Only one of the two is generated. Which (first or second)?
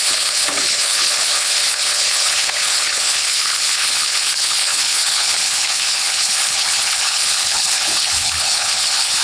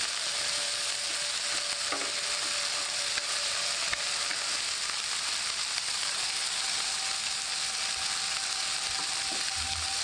first